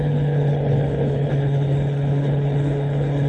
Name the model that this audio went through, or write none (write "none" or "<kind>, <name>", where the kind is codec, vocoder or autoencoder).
codec, HILCodec